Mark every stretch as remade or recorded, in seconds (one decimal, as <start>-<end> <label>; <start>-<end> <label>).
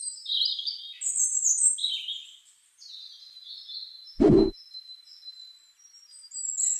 0.0-6.8 recorded